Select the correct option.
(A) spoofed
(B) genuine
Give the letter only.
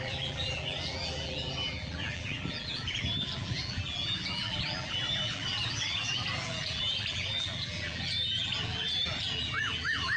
A